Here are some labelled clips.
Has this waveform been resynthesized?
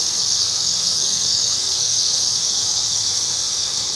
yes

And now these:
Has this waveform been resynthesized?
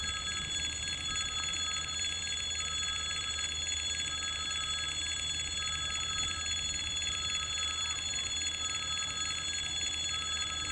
yes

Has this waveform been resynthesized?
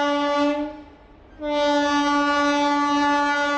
no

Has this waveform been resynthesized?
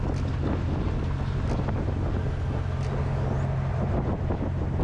no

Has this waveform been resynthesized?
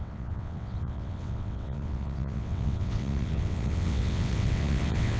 yes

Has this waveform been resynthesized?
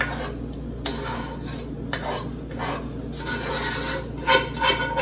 no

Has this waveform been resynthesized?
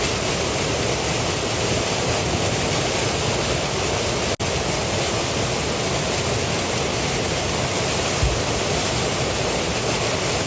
no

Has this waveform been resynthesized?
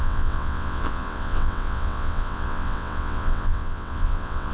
yes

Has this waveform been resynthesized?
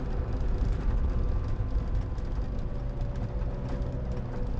no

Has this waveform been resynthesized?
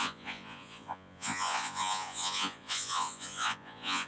yes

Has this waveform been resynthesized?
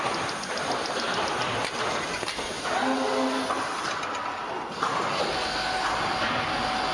no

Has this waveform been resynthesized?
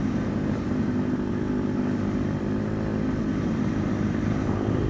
no